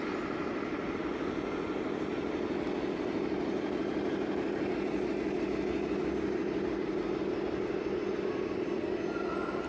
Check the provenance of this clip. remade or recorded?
recorded